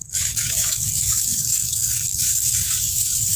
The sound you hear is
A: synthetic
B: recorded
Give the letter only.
A